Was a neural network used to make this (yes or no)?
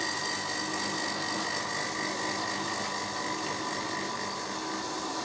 no